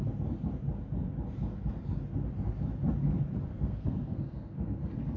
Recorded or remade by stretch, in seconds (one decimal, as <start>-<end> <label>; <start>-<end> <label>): 0.0-3.5 recorded; 3.5-5.2 remade